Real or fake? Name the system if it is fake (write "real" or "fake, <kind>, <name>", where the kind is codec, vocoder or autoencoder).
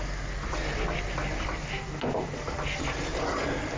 real